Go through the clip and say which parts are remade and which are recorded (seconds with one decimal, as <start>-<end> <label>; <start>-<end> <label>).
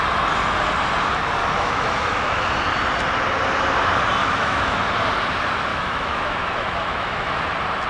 0.0-1.4 recorded; 1.4-2.4 remade; 2.4-4.2 recorded; 4.2-4.8 remade; 4.8-5.7 recorded; 5.7-7.4 remade; 7.4-7.9 recorded